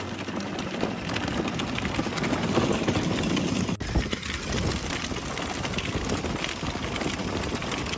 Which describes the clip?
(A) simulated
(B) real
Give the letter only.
B